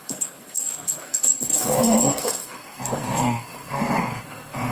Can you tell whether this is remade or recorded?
remade